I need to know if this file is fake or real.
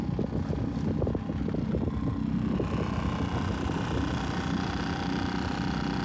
real